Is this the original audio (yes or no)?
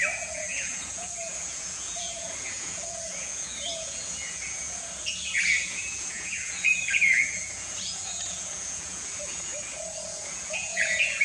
no